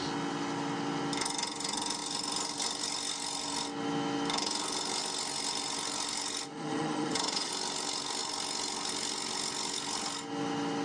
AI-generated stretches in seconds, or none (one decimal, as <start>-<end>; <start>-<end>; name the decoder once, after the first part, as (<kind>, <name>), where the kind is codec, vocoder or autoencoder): 6.5-7.5 (vocoder, Vocos)